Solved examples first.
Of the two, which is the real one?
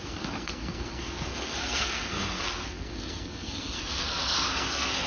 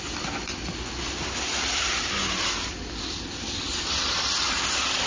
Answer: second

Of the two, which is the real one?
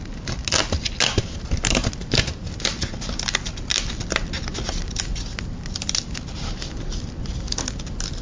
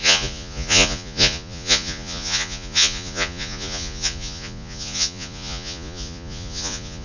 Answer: first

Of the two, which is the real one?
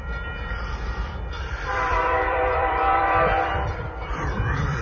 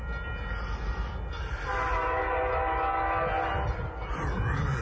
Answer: second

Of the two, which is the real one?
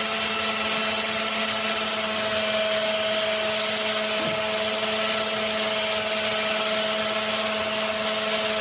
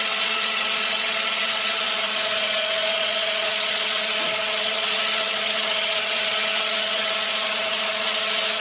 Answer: first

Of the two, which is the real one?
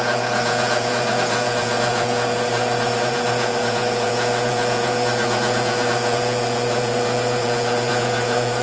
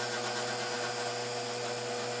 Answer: second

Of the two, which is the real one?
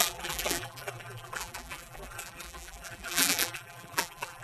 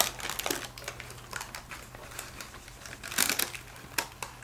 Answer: second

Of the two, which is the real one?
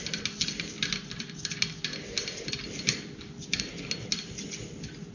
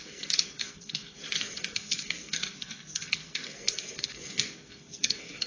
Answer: first